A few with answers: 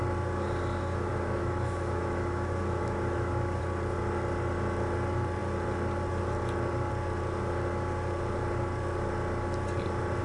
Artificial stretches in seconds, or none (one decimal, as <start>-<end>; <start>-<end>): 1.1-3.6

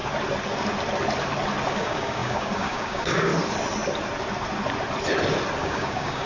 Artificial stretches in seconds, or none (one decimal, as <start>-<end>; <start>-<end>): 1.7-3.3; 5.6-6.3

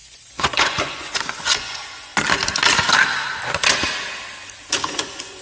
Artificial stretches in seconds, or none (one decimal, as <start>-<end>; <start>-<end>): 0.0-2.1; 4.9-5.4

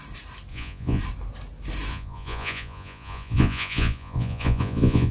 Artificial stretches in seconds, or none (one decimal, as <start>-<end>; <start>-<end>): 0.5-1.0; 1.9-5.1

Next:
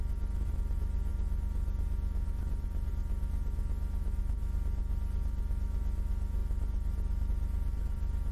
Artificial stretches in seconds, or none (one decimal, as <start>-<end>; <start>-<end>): none

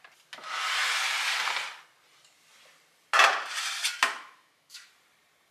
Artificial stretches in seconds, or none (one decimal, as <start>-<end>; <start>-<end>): 4.1-4.9